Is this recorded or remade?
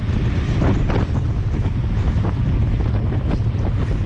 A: recorded